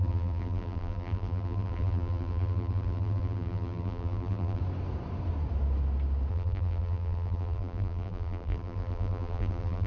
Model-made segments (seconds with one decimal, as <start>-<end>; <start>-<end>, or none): 0.0-4.6; 6.3-9.9